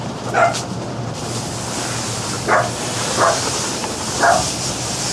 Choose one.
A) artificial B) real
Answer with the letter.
B